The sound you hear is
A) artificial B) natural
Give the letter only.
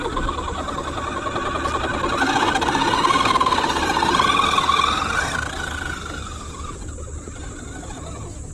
B